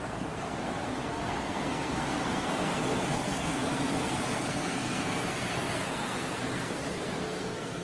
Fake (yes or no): yes